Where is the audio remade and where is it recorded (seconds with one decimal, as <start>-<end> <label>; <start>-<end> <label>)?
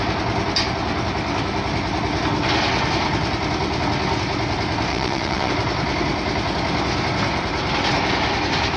0.0-4.9 recorded; 4.9-5.5 remade; 5.5-8.8 recorded